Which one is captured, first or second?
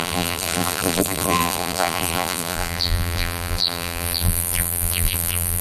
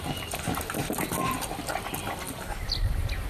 second